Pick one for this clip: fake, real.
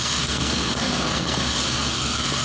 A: fake